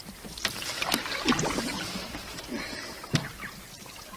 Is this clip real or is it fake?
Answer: real